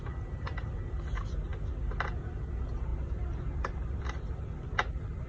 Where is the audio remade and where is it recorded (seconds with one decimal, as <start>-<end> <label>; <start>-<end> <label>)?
0.0-5.3 recorded